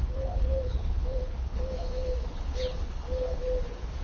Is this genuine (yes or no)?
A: no